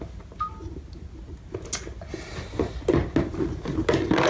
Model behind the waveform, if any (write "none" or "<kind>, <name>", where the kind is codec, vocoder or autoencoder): none